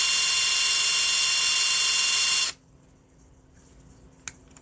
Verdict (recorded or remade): recorded